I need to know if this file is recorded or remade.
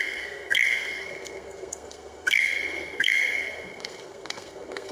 remade